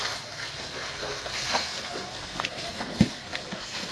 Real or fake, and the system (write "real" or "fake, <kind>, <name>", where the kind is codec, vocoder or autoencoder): fake, codec, SNAC